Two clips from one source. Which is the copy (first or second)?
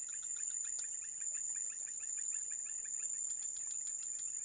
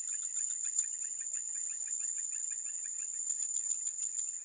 second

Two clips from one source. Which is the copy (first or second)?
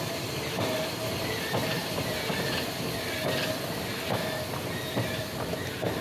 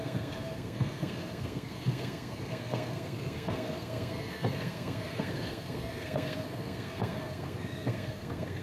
second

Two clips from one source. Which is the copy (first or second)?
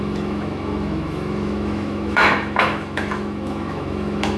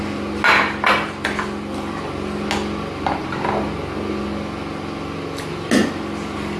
first